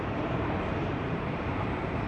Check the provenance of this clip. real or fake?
fake